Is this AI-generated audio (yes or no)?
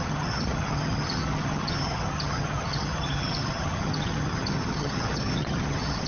yes